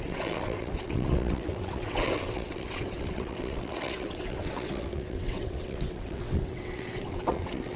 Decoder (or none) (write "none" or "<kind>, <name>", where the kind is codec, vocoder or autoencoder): vocoder, WaveNeXt